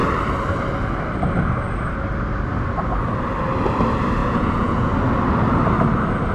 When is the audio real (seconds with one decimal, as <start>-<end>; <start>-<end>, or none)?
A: 0.0-4.2; 4.9-6.3